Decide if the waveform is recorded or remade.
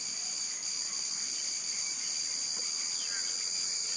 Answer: recorded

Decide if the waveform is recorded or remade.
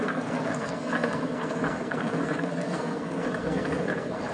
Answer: remade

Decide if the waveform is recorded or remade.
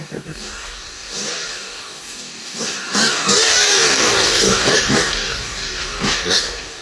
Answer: remade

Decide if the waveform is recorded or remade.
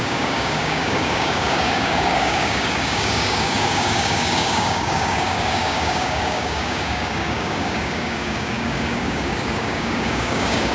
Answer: remade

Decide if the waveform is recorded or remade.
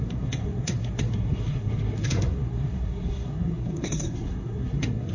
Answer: remade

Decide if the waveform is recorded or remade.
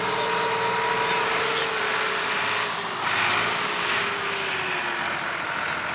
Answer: recorded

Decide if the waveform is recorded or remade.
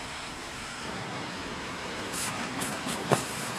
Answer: remade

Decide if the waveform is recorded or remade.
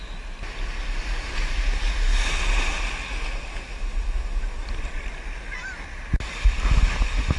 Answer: recorded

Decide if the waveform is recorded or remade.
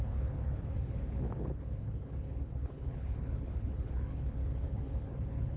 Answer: remade